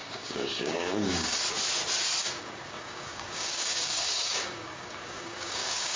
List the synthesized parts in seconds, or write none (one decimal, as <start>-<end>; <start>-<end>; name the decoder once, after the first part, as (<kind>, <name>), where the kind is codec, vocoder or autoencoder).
0.0-1.4 (codec, DAC); 2.2-6.0